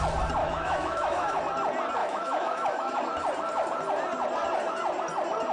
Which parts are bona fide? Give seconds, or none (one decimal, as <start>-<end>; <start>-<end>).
0.0-0.4; 1.4-2.0; 3.0-5.5